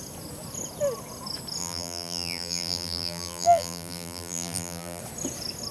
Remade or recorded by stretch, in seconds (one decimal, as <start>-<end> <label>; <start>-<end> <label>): 0.0-1.6 recorded; 1.6-5.0 remade; 5.0-5.7 recorded